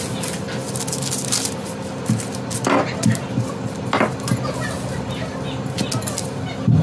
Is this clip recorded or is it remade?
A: recorded